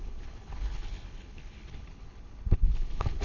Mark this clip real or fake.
fake